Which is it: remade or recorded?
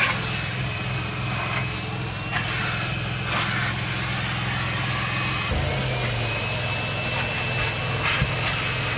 recorded